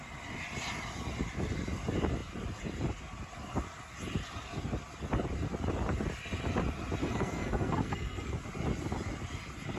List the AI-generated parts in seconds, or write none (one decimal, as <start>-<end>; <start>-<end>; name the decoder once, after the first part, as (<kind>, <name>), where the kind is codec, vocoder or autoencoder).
7.0-8.3 (codec, SNAC)